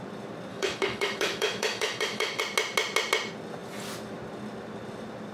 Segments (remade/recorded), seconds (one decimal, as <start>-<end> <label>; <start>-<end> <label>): 0.0-0.5 recorded; 0.5-2.4 remade; 2.4-5.3 recorded